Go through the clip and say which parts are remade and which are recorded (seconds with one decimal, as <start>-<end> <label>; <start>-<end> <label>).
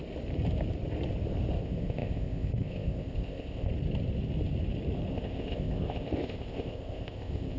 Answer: 0.0-1.6 recorded; 1.6-3.7 remade; 3.7-5.1 recorded; 5.1-7.6 remade